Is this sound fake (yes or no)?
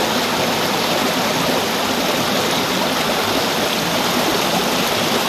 no